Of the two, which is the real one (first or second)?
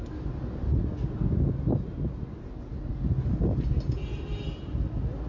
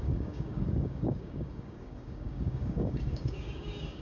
first